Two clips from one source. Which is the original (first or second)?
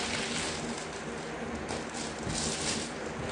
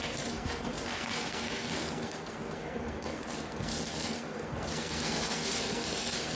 first